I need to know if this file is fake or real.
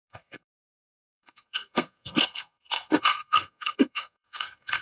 fake